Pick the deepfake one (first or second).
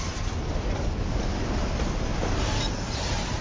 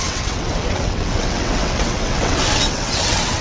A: second